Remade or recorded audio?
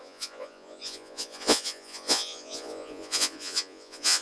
remade